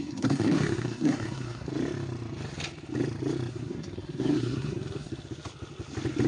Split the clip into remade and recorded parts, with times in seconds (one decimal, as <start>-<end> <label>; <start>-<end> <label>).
0.0-1.7 remade; 1.7-3.5 recorded; 3.5-5.1 remade; 5.1-6.3 recorded